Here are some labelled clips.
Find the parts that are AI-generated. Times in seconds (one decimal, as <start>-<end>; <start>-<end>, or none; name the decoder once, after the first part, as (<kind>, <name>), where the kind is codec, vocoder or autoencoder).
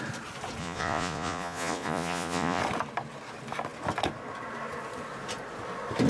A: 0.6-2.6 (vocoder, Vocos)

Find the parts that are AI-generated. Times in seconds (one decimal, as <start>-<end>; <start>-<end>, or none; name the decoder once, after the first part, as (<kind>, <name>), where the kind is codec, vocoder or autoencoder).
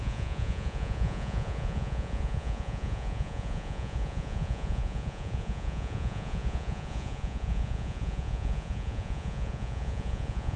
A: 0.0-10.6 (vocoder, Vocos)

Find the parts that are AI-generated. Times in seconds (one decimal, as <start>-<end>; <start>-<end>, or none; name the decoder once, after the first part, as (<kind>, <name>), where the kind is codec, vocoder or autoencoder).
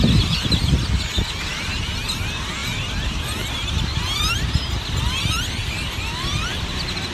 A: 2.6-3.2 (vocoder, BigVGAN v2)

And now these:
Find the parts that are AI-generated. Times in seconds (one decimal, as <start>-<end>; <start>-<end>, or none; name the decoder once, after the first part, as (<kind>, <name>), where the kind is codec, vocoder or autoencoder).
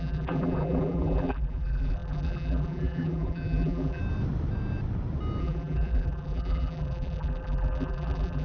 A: 0.0-4.0 (vocoder, BigVGAN v2); 5.4-8.4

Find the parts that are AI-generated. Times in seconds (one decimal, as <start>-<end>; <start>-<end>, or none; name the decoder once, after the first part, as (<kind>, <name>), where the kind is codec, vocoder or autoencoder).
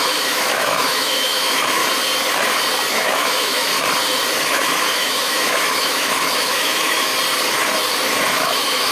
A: 0.0-1.8 (autoencoder, DAC-VAE); 2.9-3.7; 4.4-7.1; 8.3-8.9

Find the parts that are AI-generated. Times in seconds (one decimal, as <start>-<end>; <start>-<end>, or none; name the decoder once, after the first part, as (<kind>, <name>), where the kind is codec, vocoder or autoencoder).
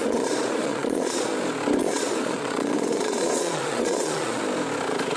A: 0.0-1.3 (vocoder, Vocos); 1.8-4.4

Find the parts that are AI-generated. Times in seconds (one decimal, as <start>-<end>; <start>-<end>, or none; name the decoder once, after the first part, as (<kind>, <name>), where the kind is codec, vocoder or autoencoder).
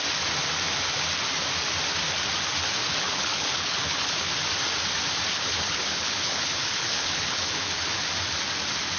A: 2.8-4.3 (codec, HILCodec); 5.3-8.0